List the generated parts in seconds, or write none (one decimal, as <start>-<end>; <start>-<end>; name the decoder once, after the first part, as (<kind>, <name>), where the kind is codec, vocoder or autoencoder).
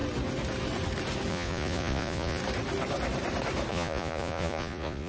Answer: 1.3-2.4 (vocoder, Vocos); 3.7-5.1